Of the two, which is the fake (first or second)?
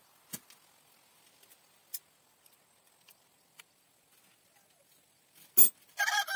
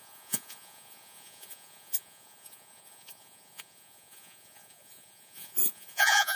second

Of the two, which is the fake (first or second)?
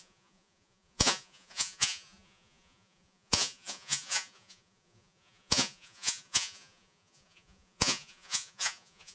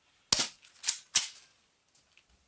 first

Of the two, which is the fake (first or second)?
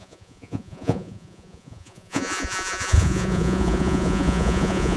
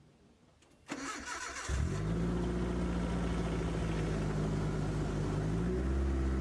first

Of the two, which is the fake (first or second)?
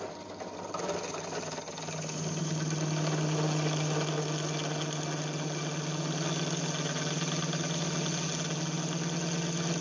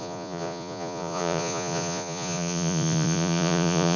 second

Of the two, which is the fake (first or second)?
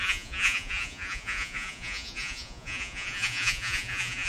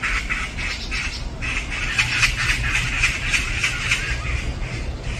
first